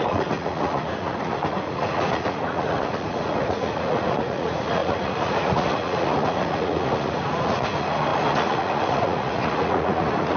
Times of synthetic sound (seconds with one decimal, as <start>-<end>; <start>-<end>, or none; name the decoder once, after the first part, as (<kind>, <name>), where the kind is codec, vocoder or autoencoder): 0.0-10.4 (vocoder, Vocos)